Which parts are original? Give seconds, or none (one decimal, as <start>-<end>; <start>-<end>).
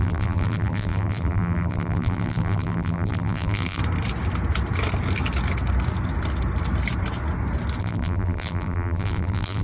3.8-7.8